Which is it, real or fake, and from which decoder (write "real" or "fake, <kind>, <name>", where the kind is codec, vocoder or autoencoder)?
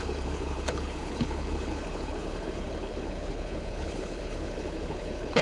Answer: fake, codec, HILCodec